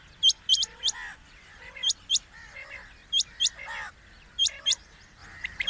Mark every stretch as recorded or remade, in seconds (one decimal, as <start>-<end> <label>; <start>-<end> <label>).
0.0-3.0 remade; 3.0-3.9 recorded; 3.9-5.2 remade; 5.2-5.7 recorded